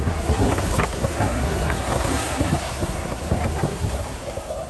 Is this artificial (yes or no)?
yes